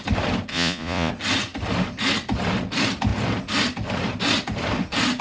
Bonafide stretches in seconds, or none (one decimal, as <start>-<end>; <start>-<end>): 0.0-0.5; 1.1-5.2